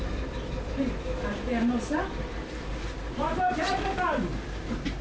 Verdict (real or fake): real